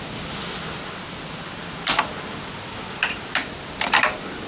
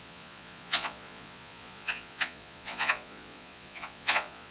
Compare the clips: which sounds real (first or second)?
first